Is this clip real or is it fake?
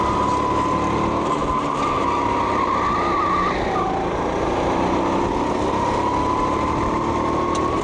real